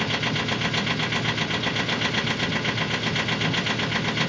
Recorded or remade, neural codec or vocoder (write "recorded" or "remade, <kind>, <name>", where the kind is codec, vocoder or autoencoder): recorded